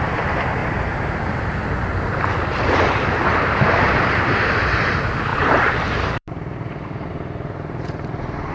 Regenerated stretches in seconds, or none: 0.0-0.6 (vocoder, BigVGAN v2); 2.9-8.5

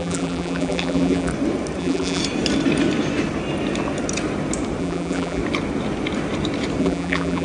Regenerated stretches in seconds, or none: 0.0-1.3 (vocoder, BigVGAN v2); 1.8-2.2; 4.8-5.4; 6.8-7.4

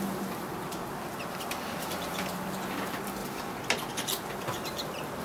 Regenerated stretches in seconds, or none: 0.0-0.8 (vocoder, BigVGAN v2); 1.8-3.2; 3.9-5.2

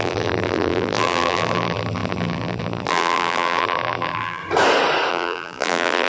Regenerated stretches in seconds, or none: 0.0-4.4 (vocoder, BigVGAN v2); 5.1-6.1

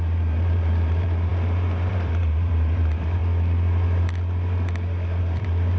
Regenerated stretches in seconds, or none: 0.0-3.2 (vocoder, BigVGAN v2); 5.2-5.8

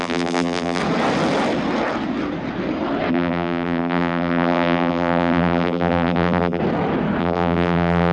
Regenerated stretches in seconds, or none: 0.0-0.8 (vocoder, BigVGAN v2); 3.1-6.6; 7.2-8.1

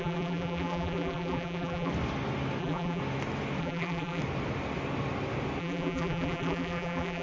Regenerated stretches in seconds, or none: 0.0-1.9 (vocoder, BigVGAN v2); 2.6-3.0; 3.6-4.2; 5.6-7.2